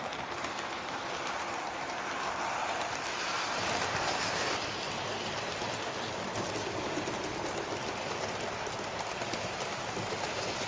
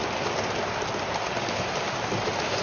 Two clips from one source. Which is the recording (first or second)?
second